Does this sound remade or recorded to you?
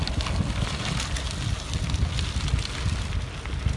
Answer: recorded